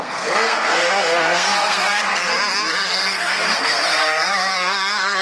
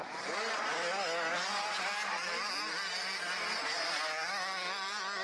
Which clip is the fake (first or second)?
first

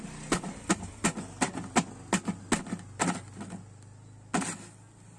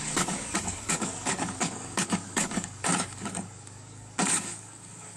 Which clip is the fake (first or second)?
second